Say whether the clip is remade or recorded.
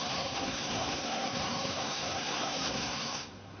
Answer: remade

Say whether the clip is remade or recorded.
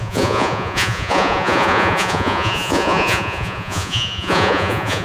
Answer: remade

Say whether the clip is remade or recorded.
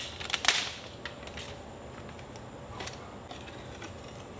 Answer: recorded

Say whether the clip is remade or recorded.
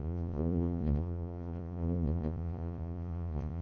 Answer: remade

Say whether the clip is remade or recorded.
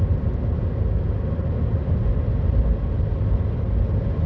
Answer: recorded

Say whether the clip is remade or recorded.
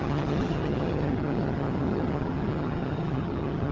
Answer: remade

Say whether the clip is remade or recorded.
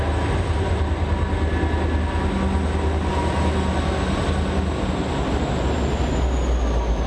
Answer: recorded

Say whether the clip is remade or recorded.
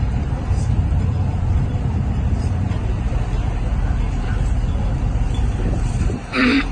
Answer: remade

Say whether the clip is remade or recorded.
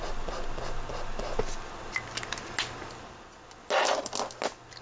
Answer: recorded